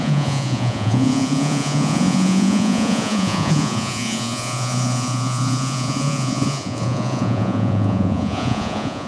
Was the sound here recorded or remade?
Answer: remade